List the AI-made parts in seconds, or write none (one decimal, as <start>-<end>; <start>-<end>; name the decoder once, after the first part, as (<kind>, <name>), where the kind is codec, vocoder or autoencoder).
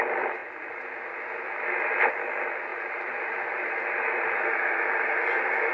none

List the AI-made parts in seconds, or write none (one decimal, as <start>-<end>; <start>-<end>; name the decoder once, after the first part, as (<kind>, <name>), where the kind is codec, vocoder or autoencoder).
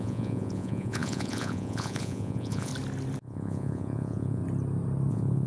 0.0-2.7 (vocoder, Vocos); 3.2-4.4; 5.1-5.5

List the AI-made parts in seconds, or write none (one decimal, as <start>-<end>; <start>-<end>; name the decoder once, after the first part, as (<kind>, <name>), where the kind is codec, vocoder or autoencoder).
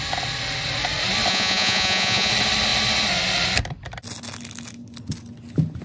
1.3-2.3 (vocoder, Vocos)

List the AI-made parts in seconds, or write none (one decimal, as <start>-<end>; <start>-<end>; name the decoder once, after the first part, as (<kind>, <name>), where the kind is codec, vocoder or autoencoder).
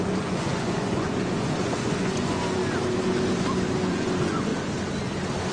0.0-2.6 (vocoder, Vocos); 3.9-4.5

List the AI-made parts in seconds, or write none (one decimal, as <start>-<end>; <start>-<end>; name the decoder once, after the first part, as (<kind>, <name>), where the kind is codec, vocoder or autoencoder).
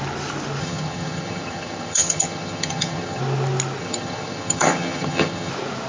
0.6-3.2 (vocoder, HiFi-GAN); 3.8-5.5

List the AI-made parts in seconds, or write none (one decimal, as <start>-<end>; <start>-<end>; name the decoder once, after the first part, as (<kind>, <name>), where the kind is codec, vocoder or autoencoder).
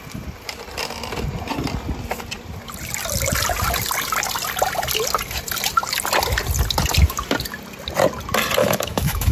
8.6-9.3 (autoencoder, DAC-VAE)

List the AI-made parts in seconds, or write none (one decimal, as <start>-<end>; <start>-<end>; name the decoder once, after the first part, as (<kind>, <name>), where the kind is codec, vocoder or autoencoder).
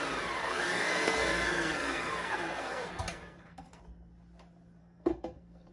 0.4-3.8 (codec, SNAC); 4.8-5.7